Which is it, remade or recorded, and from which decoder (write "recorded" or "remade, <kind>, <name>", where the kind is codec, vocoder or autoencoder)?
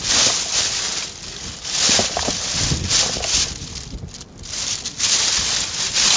recorded